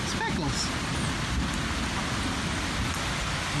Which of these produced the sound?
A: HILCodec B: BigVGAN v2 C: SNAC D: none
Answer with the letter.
D